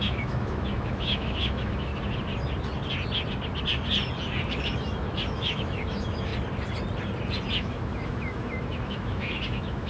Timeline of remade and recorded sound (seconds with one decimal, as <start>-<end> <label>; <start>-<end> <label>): 0.0-1.9 remade; 1.9-4.5 recorded; 4.5-6.3 remade; 6.3-7.5 recorded; 7.5-9.9 remade